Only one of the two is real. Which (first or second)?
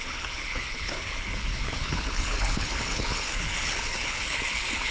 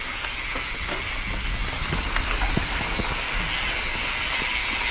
second